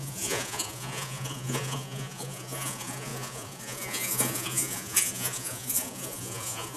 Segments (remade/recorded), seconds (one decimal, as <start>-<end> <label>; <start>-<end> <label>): 0.0-6.8 remade